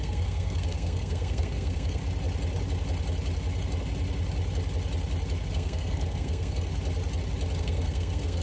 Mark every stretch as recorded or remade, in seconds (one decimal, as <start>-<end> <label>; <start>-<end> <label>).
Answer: 0.0-2.0 remade; 2.0-5.5 recorded; 5.5-6.7 remade; 6.7-7.6 recorded; 7.6-8.4 remade